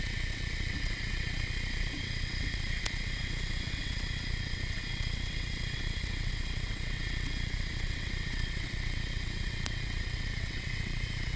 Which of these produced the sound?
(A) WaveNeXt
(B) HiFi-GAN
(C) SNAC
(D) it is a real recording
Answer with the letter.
A